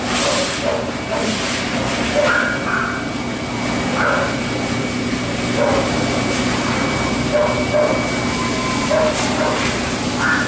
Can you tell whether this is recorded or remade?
recorded